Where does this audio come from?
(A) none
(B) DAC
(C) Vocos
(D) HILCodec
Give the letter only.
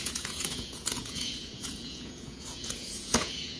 C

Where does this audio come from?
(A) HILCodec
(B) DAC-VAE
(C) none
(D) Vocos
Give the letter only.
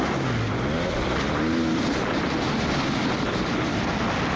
C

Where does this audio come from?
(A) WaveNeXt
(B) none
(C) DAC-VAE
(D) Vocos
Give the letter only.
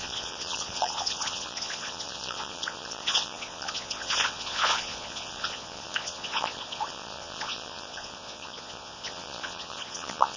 D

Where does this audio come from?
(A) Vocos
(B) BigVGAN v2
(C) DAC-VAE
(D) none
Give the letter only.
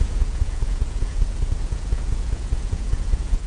A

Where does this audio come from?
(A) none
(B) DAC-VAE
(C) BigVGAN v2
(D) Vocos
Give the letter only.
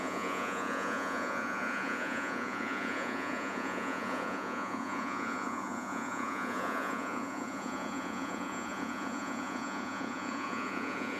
D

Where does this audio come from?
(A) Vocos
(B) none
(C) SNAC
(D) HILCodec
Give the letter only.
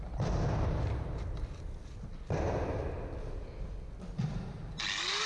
B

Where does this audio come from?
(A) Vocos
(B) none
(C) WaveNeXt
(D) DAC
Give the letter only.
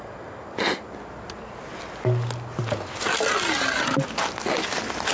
B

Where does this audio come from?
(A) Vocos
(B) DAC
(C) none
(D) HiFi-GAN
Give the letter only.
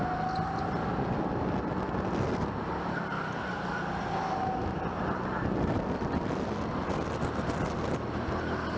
C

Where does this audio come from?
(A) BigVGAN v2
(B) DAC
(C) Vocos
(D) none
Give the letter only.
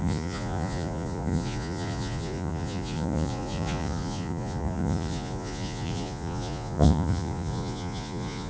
C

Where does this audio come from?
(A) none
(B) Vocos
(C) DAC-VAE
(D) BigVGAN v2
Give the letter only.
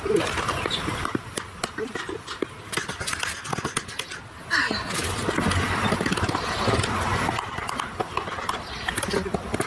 A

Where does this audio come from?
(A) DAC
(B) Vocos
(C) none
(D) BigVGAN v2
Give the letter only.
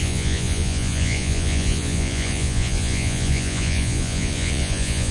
B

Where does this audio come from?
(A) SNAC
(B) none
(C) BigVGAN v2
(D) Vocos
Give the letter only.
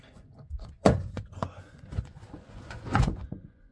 D